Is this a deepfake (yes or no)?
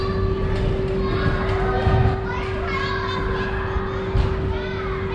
no